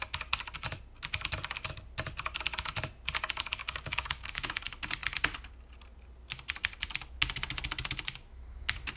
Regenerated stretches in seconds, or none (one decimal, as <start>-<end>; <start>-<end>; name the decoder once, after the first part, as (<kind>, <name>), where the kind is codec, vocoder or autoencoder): 3.6-4.6 (codec, DAC)